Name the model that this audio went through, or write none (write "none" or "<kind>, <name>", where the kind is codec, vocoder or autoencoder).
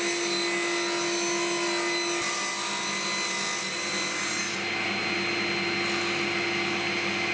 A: none